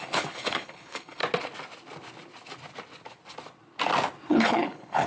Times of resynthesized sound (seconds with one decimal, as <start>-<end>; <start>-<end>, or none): 0.0-1.2; 4.3-5.1